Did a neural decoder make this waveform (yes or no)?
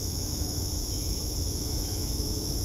yes